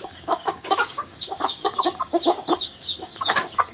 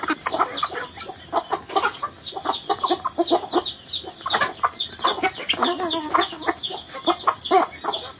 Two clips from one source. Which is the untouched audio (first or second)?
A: second